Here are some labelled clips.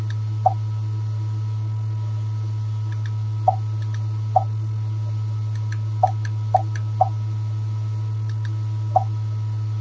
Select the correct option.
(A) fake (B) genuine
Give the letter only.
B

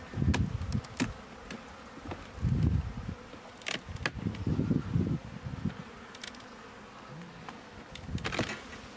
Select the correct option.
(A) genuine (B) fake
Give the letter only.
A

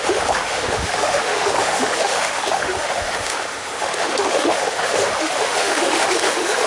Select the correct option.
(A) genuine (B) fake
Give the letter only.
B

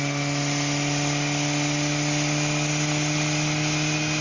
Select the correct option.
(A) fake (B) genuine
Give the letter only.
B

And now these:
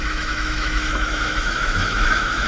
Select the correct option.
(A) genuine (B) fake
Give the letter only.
B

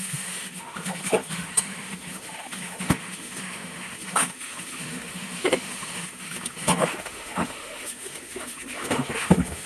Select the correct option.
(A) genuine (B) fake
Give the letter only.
B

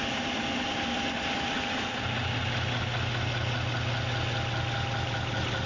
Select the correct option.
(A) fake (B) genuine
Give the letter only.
B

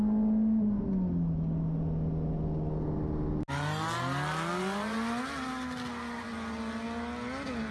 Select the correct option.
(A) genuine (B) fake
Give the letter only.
A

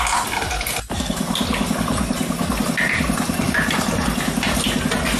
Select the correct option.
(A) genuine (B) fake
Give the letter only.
A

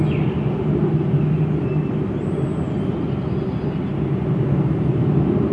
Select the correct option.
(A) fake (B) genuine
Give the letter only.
B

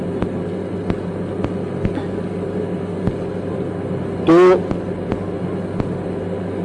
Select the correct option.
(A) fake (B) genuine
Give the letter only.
B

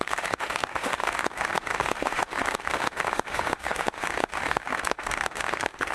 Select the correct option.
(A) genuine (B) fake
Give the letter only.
B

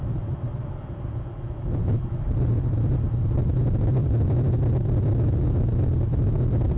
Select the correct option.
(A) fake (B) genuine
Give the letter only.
B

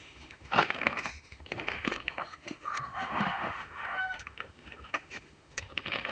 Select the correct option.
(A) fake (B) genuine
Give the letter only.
A